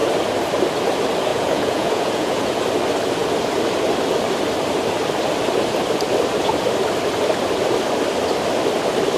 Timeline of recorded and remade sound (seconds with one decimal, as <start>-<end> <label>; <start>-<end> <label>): 0.0-1.3 recorded; 1.3-2.6 remade; 2.6-9.2 recorded